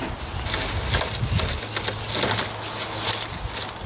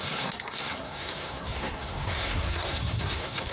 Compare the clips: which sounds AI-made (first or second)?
second